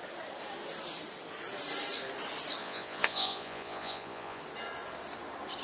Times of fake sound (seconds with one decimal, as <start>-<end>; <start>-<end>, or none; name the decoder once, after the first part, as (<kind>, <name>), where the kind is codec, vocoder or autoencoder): 2.6-4.4 (vocoder, Vocos)